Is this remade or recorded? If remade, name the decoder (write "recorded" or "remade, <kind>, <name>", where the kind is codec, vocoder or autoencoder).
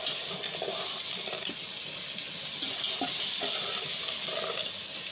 recorded